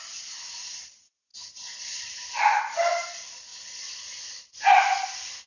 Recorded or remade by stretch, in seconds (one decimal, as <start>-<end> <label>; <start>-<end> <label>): 0.0-5.5 recorded